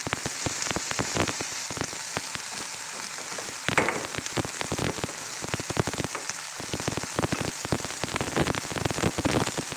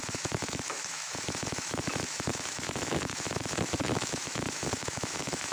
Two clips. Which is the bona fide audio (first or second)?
first